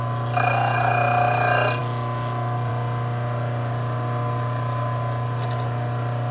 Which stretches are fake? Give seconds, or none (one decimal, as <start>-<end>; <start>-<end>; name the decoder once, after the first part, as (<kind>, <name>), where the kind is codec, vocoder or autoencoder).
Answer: none